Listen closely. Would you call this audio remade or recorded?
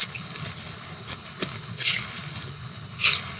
remade